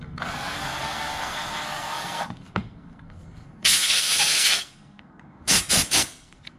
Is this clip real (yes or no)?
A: no